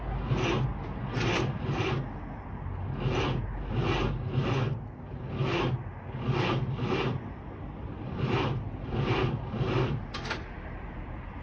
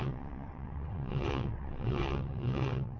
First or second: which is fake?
second